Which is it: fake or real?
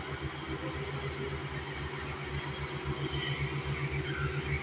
real